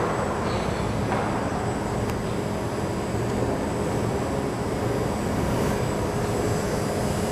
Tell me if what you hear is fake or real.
real